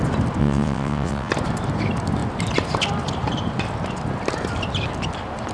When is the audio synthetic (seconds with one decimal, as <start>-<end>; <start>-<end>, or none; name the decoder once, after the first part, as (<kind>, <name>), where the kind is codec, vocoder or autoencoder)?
0.4-1.3 (vocoder, WaveNeXt)